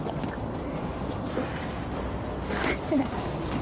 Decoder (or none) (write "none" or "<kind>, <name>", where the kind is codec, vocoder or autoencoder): none